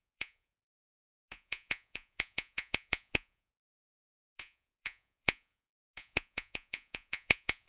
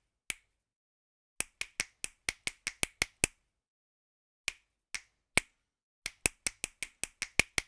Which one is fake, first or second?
first